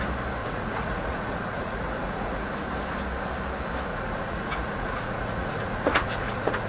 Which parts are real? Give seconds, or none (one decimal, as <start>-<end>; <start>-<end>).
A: 0.0-0.4; 2.5-3.9